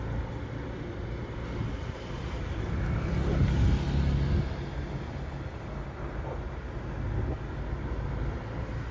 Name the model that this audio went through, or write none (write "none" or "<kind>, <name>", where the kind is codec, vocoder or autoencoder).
none